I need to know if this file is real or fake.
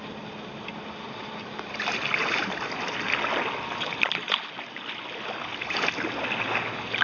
real